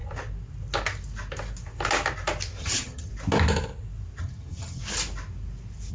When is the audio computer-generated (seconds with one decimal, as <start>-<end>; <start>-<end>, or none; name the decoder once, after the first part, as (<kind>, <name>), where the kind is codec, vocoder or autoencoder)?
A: 2.6-3.1 (vocoder, HiFi-GAN); 4.2-4.8